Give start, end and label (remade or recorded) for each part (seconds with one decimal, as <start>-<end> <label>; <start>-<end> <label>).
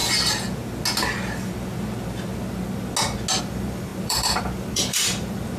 0.0-3.4 recorded; 3.4-5.6 remade